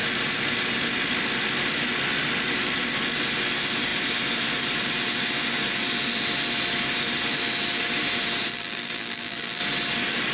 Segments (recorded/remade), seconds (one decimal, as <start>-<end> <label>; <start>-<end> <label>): 0.0-8.5 recorded; 8.5-9.6 remade; 9.6-10.3 recorded